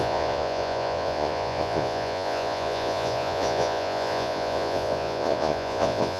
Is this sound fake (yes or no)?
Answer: yes